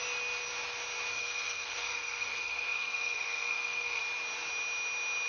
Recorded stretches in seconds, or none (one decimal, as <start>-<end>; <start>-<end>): 0.0-1.1; 4.0-5.3